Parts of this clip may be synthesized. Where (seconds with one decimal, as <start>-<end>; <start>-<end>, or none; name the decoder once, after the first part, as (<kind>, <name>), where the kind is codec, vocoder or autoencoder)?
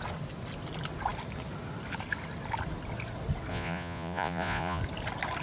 3.5-4.8 (vocoder, Vocos)